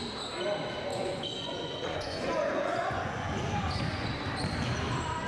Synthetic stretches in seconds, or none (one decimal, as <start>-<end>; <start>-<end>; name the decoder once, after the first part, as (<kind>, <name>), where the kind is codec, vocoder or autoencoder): 0.9-4.1 (vocoder, Vocos)